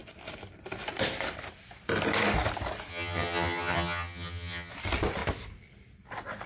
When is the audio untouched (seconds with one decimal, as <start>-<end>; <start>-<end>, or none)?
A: 0.0-2.9; 4.7-6.5